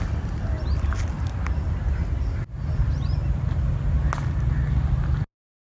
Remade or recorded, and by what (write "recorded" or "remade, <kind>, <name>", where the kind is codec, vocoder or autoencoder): recorded